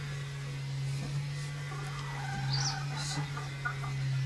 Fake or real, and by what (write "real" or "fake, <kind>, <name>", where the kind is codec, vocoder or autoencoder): real